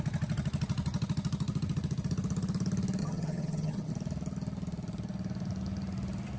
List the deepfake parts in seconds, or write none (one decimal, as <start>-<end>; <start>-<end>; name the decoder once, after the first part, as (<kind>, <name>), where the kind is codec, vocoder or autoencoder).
3.0-3.9 (vocoder, HiFi-GAN)